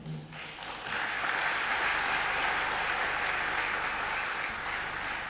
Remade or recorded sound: recorded